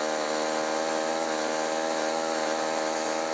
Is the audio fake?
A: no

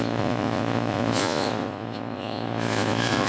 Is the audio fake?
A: yes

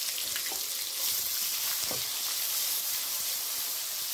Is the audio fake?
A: no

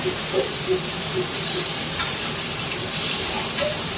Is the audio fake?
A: yes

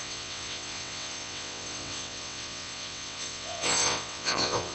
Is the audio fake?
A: yes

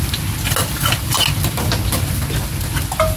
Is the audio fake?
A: no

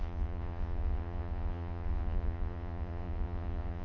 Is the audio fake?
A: yes